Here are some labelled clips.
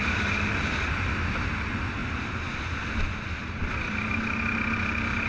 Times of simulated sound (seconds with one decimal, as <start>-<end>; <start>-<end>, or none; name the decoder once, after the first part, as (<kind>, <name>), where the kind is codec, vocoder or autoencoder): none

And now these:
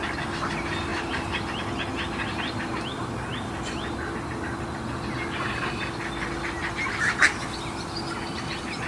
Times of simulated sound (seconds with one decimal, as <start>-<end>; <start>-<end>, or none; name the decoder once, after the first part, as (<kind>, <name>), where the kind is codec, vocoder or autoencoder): 0.9-1.6 (vocoder, BigVGAN v2)

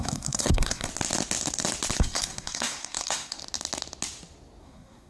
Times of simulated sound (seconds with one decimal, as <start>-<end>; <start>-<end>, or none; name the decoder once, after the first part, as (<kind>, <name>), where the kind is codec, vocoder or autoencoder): 0.0-0.9 (codec, SNAC); 2.0-3.4; 4.6-5.1